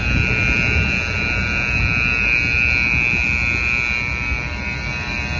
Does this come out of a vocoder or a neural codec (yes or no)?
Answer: no